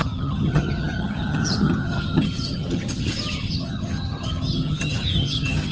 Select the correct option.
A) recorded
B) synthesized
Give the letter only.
B